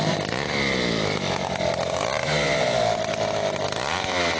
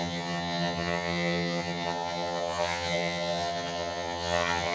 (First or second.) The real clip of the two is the first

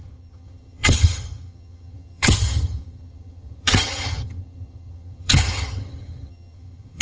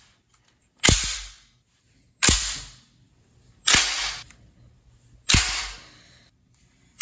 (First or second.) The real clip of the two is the second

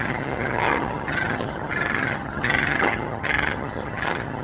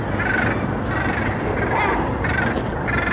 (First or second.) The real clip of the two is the second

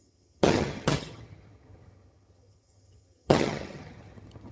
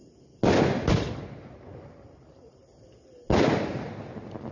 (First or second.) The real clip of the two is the second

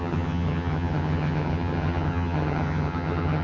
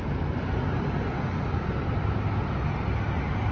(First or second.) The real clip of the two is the second